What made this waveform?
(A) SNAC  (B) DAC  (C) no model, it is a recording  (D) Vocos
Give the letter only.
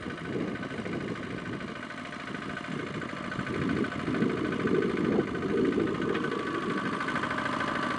C